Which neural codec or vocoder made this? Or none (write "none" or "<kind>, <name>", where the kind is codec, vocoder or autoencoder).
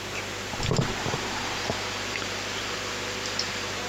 none